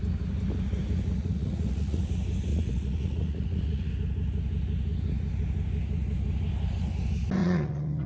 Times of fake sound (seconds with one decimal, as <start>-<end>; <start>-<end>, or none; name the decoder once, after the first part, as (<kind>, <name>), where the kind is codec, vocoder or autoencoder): 1.2-2.0 (vocoder, Vocos); 2.5-3.9; 7.4-8.1